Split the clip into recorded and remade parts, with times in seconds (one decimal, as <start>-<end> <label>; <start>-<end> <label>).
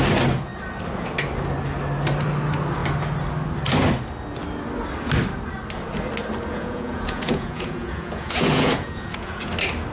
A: 0.0-6.5 recorded; 6.5-9.5 remade; 9.5-9.9 recorded